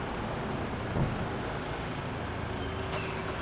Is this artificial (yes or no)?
no